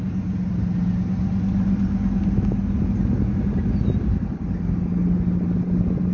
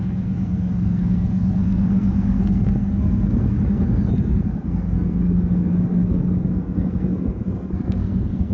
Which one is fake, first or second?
second